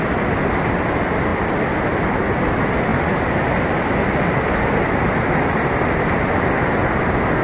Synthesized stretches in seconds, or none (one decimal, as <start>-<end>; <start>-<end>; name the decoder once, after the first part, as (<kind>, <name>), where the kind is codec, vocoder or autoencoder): none